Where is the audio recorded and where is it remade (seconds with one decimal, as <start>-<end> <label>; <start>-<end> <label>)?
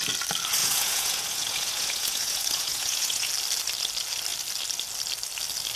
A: 0.0-0.6 recorded; 0.6-3.3 remade; 3.3-5.8 recorded